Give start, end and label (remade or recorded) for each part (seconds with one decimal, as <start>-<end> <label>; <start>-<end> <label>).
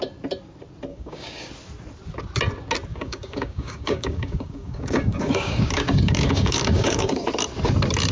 0.0-0.9 recorded; 0.9-1.5 remade; 1.5-2.9 recorded; 2.9-7.3 remade; 7.3-8.1 recorded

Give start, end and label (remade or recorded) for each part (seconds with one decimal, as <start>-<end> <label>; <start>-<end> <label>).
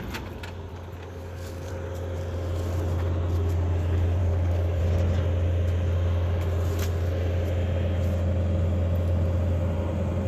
0.0-0.7 recorded; 0.7-1.7 remade; 1.7-4.2 recorded; 4.2-4.8 remade; 4.8-10.3 recorded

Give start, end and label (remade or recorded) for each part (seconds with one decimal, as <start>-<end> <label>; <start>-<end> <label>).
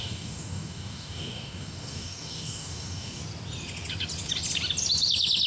0.0-3.2 remade; 3.2-5.5 recorded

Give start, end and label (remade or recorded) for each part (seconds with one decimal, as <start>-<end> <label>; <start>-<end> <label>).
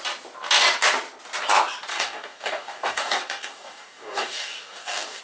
0.0-1.9 recorded; 1.9-5.2 remade